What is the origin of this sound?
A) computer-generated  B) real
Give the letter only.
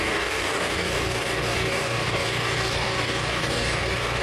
A